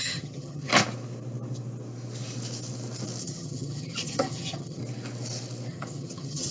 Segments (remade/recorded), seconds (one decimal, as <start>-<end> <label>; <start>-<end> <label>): 0.0-0.7 remade; 0.7-3.2 recorded; 3.2-4.8 remade; 4.8-5.7 recorded; 5.7-6.5 remade